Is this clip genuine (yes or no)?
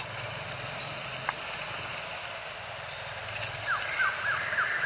yes